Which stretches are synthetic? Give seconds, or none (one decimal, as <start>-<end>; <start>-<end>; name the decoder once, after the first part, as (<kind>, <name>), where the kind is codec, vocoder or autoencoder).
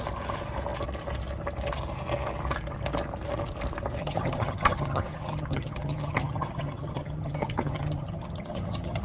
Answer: 4.0-9.0 (vocoder, HiFi-GAN)